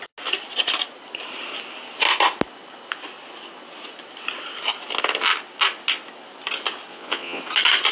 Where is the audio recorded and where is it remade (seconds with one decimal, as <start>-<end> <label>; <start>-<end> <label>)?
0.0-6.9 recorded; 6.9-7.4 remade; 7.4-7.9 recorded